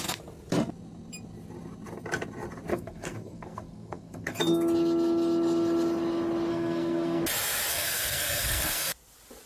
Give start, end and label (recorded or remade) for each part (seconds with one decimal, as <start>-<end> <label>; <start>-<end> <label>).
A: 0.0-2.7 recorded; 2.7-4.4 remade; 4.4-6.5 recorded; 6.5-7.2 remade; 7.2-7.7 recorded; 7.7-8.9 remade; 8.9-9.5 recorded